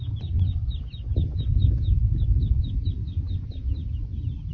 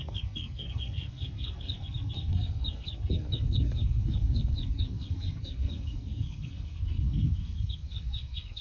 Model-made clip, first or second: second